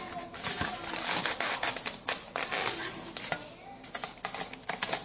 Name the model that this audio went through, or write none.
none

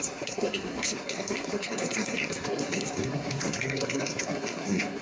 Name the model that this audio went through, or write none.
codec, SNAC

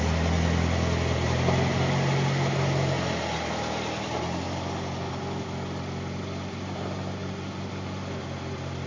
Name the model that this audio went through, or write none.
none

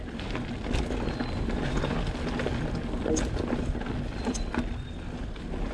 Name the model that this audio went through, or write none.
none